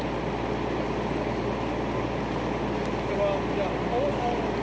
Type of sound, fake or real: real